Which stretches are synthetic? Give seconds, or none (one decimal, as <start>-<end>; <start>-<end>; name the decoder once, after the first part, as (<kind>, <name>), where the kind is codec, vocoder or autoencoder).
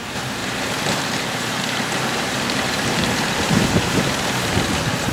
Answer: 0.0-5.1 (vocoder, BigVGAN v2)